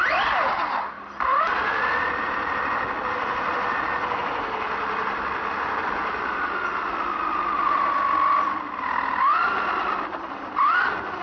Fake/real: real